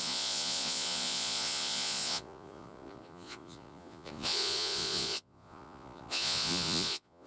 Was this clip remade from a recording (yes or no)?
yes